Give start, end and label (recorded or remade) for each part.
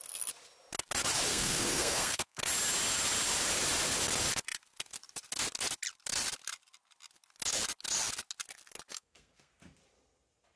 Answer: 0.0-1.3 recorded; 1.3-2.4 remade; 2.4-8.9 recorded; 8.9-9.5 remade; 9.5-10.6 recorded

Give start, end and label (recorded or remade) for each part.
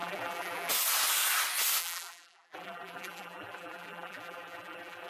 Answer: 0.0-0.7 remade; 0.7-1.8 recorded; 1.8-5.1 remade